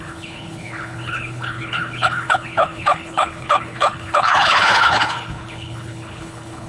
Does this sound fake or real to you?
fake